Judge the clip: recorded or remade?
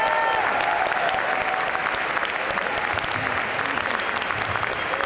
recorded